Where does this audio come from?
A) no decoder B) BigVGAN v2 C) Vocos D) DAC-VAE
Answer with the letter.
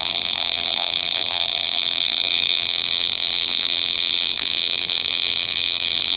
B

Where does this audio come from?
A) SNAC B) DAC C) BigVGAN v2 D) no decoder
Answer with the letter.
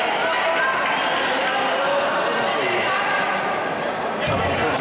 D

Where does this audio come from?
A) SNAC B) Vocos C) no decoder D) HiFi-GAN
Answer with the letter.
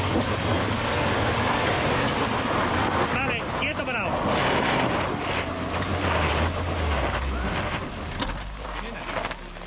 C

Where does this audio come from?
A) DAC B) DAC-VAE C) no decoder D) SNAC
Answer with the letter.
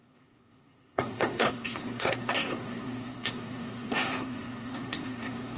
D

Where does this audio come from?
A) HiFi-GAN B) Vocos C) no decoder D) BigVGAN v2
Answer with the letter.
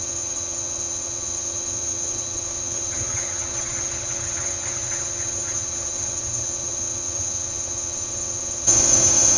A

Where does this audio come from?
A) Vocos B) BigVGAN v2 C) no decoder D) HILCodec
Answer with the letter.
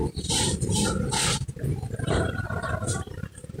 B